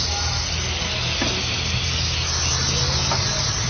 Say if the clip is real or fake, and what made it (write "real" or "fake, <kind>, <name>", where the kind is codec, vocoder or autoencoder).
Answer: real